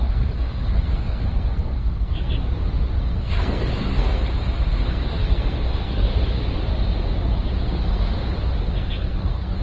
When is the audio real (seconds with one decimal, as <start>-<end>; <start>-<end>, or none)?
2.4-3.0; 4.2-4.7; 6.1-7.6; 8.2-8.7